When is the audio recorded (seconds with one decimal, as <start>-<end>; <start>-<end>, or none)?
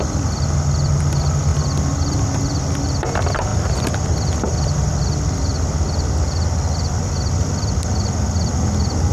0.0-9.1